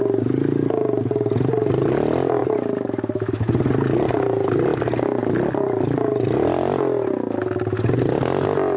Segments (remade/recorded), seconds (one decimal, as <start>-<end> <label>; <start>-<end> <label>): 0.0-8.8 recorded